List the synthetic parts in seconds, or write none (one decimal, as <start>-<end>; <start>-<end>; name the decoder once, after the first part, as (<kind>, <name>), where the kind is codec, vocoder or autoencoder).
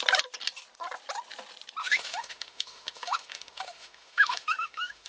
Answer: 1.8-5.1 (autoencoder, DAC-VAE)